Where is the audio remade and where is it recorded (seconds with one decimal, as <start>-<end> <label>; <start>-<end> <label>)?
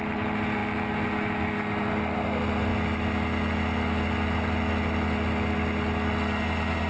0.0-6.9 recorded